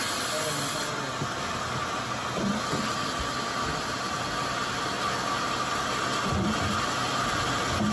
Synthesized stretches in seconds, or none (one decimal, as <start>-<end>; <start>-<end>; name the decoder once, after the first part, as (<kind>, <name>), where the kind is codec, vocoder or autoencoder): none